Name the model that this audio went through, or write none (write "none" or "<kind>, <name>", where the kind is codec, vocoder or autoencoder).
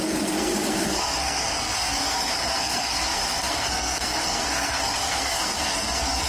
codec, SNAC